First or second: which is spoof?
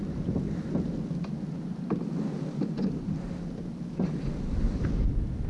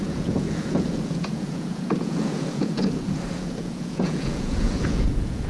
second